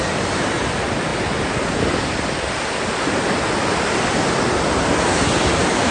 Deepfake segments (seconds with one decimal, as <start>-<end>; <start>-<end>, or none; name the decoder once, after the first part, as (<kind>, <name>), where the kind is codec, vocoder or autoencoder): none